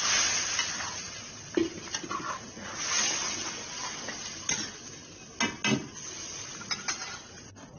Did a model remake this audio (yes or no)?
no